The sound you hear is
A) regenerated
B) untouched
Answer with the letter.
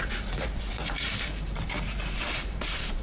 A